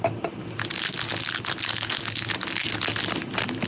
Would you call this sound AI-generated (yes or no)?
no